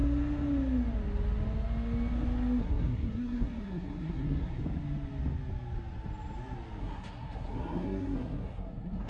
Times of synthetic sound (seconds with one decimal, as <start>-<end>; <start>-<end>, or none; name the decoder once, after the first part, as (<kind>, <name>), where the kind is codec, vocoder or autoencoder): 2.6-4.6 (codec, SNAC); 6.8-9.1